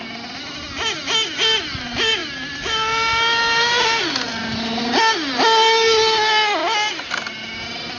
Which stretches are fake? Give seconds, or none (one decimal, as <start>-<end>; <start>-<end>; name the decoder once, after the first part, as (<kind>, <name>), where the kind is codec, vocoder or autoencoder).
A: none